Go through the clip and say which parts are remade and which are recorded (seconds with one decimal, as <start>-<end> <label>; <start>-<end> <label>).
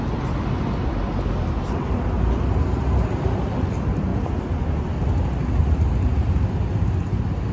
0.0-7.5 recorded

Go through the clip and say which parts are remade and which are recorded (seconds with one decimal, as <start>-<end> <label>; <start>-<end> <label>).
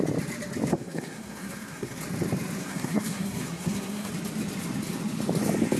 0.0-0.7 recorded; 0.7-2.0 remade; 2.0-2.6 recorded; 2.6-4.1 remade; 4.1-5.8 recorded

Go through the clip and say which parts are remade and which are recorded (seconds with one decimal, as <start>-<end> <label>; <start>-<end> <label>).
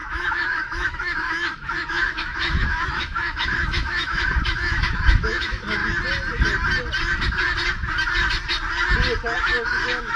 0.0-5.8 remade; 5.8-9.4 recorded; 9.4-10.2 remade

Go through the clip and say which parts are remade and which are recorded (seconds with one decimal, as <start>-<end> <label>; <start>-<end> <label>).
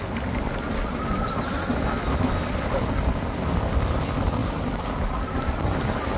0.0-6.2 recorded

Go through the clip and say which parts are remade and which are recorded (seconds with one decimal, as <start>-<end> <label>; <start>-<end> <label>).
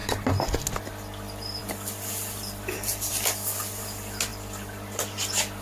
0.0-1.6 recorded; 1.6-3.1 remade; 3.1-4.3 recorded; 4.3-5.6 remade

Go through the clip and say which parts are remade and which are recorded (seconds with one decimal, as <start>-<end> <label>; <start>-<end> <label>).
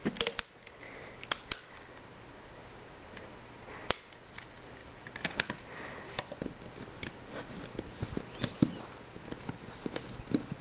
0.0-1.7 remade; 1.7-4.8 recorded; 4.8-6.6 remade; 6.6-10.6 recorded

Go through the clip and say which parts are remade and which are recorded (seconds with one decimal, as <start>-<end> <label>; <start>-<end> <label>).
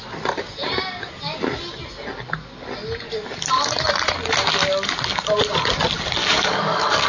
0.0-6.2 recorded; 6.2-7.1 remade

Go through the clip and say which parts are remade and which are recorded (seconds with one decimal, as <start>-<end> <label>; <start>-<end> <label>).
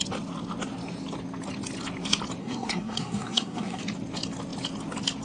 0.0-2.4 recorded; 2.4-3.8 remade; 3.8-5.2 recorded